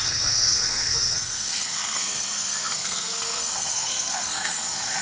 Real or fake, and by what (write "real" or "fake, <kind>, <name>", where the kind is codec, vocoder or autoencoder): fake, codec, SNAC